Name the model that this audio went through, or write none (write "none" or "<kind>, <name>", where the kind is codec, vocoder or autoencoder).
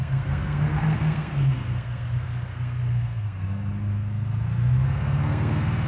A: codec, SNAC